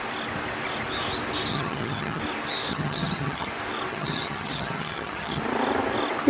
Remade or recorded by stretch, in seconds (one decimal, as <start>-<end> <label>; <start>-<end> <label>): 0.0-1.5 recorded; 1.5-2.2 remade; 2.2-2.7 recorded; 2.7-3.5 remade; 3.5-3.9 recorded; 3.9-5.4 remade; 5.4-6.3 recorded